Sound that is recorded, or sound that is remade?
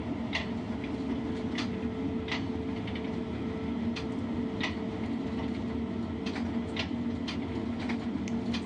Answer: recorded